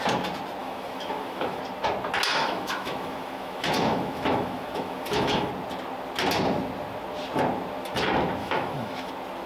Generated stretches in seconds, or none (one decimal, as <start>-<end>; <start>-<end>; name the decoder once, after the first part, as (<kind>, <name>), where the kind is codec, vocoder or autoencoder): 0.6-1.6 (autoencoder, DAC-VAE); 2.3-5.5; 8.4-9.1